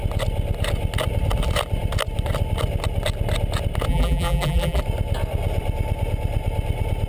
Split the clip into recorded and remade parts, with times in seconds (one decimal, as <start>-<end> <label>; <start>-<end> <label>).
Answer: 0.0-3.9 recorded; 3.9-4.8 remade; 4.8-7.1 recorded